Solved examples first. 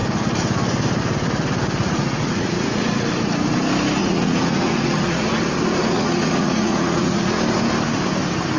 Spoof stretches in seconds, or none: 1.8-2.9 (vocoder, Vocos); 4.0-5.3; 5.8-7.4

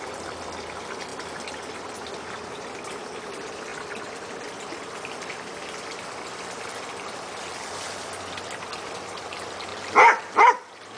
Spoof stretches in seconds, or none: none

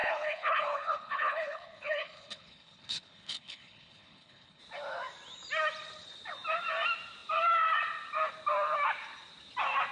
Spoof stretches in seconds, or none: 0.0-4.6 (codec, HILCodec)

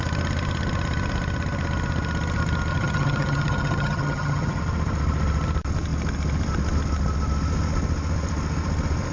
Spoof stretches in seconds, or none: 2.7-4.6 (vocoder, HiFi-GAN)

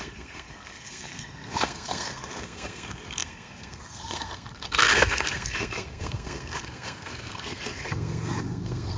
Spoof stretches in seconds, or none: 0.0-9.0 (codec, SNAC)

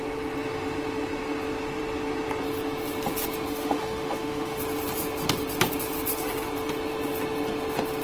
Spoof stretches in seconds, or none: 3.5-4.6 (autoencoder, DAC-VAE)